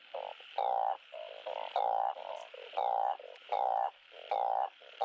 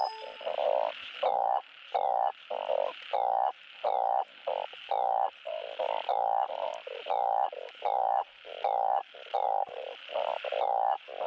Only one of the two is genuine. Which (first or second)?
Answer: second